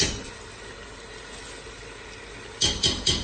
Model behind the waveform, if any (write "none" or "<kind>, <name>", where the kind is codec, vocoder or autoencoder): none